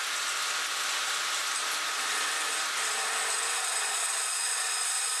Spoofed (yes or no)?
no